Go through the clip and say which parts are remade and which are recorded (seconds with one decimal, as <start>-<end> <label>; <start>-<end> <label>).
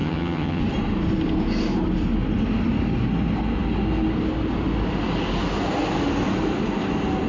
0.0-0.6 remade; 0.6-7.3 recorded